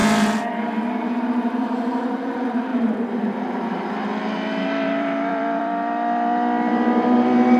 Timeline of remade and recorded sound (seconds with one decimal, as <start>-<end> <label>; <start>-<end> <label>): 0.0-7.6 remade